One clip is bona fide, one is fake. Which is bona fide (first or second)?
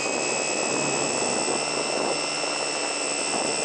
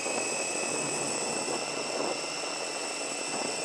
first